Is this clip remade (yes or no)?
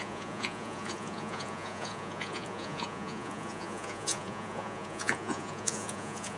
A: yes